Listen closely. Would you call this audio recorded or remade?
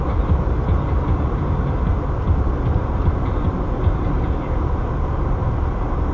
recorded